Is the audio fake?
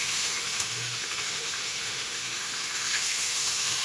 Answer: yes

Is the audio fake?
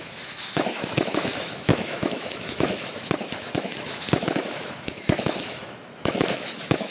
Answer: yes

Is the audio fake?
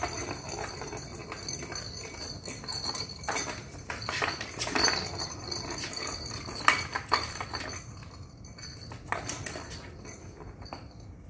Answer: no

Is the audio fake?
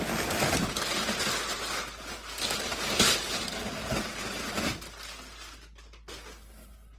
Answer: no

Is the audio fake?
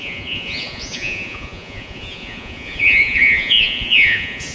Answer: yes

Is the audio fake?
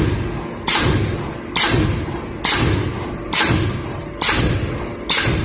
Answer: no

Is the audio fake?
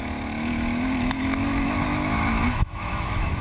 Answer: yes